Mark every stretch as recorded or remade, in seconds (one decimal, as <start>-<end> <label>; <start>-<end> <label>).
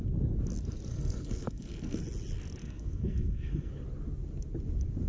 0.0-0.9 recorded; 0.9-2.0 remade; 2.0-2.6 recorded; 2.6-3.7 remade; 3.7-5.1 recorded